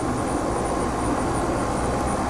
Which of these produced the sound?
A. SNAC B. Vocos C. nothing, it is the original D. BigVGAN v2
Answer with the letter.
C